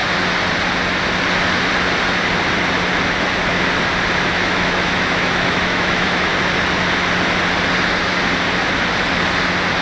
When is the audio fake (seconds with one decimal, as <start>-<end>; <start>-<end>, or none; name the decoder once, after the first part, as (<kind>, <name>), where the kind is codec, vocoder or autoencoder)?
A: 4.3-6.3 (autoencoder, DAC-VAE)